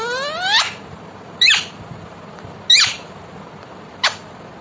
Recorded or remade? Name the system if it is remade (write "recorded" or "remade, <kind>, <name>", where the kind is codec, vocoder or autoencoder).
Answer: recorded